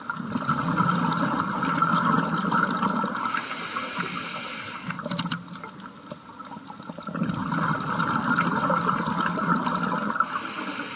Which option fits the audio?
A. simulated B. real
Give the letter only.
B